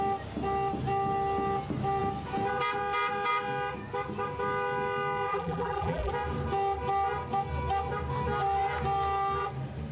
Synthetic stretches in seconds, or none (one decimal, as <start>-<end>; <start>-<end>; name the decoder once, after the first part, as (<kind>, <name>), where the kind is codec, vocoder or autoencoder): 5.3-6.1 (vocoder, BigVGAN v2)